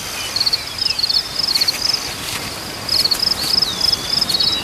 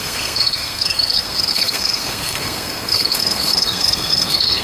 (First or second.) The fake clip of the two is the second